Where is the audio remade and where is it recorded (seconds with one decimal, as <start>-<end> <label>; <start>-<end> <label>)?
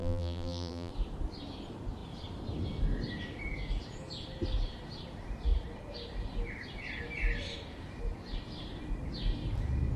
0.0-0.9 remade; 0.9-10.0 recorded